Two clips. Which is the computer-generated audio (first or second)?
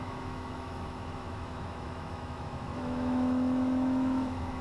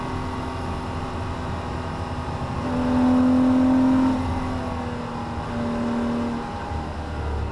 first